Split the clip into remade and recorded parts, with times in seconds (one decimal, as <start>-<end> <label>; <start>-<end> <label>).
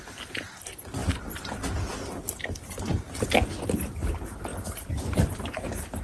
0.0-6.0 recorded